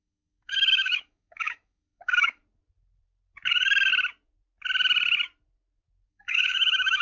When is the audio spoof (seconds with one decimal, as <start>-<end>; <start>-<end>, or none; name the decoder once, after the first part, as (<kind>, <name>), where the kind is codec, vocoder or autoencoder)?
0.0-2.4 (autoencoder, DAC-VAE); 3.5-3.9; 6.1-7.0